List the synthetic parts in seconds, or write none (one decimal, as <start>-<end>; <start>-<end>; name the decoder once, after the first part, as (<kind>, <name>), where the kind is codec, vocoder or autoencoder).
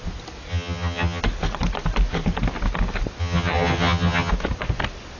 0.5-1.2 (vocoder, HiFi-GAN); 3.2-4.3